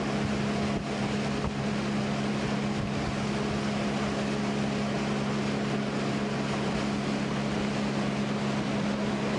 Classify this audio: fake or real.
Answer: real